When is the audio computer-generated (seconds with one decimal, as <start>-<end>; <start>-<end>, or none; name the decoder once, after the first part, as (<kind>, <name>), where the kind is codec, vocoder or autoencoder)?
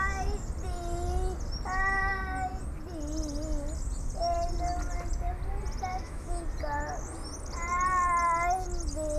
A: 5.9-6.4 (autoencoder, DAC-VAE)